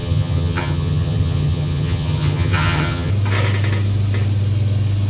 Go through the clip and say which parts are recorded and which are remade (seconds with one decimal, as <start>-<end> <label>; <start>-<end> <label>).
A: 0.0-3.1 remade; 3.1-5.1 recorded